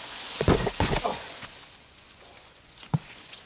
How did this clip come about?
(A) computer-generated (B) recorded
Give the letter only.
A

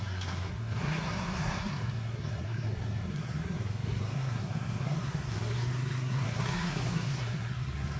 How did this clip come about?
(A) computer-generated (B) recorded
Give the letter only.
A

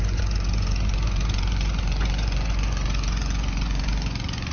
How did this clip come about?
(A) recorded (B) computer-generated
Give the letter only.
B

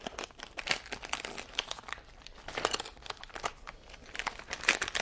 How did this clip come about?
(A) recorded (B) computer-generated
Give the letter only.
A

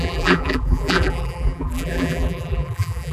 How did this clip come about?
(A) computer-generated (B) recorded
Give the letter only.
A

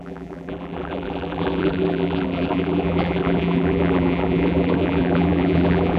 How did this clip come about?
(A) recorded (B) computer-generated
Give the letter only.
B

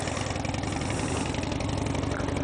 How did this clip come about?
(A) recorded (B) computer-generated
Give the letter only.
A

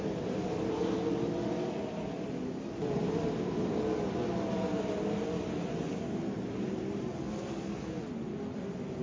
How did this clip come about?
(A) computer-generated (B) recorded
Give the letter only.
B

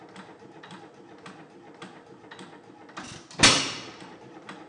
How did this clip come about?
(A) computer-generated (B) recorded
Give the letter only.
B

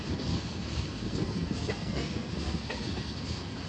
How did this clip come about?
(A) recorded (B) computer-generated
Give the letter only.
B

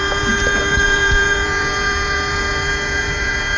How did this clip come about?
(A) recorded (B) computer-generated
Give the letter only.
B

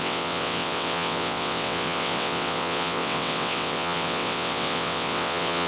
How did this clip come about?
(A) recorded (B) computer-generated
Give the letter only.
B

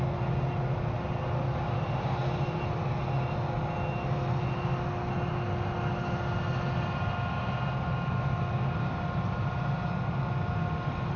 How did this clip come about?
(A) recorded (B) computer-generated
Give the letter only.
A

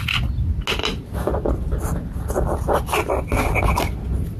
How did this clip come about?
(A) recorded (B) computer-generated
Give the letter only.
A